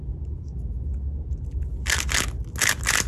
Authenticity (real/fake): real